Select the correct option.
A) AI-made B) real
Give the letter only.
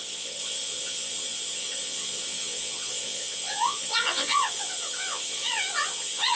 A